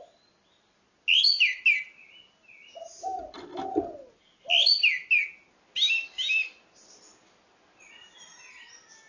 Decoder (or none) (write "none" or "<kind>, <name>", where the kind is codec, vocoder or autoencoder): none